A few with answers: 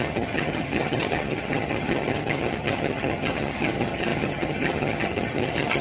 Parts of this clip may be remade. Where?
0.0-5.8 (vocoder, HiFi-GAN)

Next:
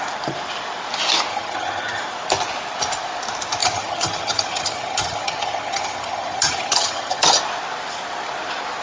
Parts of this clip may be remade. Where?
1.3-2.0 (vocoder, HiFi-GAN); 3.6-7.4

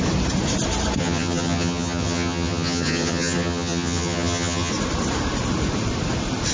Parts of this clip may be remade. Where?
1.0-4.7 (vocoder, HiFi-GAN)

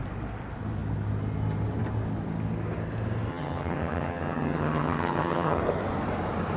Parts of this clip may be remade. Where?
3.3-5.6 (vocoder, HiFi-GAN)

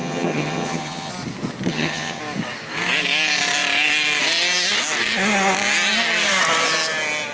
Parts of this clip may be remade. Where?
0.0-1.1 (vocoder, HiFi-GAN); 1.7-2.2

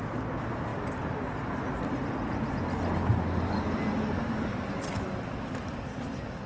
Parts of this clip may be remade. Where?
none

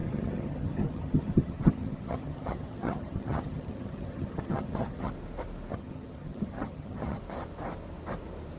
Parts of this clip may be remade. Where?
0.0-5.1 (vocoder, HiFi-GAN); 5.7-7.2